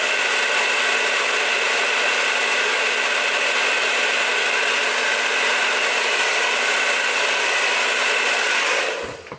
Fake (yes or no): no